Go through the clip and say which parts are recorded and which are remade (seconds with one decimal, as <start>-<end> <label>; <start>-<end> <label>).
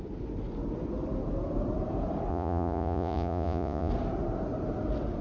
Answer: 0.0-2.3 recorded; 2.3-3.9 remade; 3.9-5.2 recorded